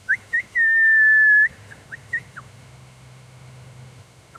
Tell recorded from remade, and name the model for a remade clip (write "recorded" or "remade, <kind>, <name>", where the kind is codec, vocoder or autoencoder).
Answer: remade, autoencoder, DAC-VAE